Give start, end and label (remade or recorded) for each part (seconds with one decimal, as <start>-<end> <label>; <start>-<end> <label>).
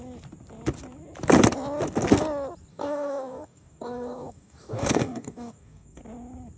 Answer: 0.0-2.7 recorded; 2.7-6.0 remade; 6.0-6.6 recorded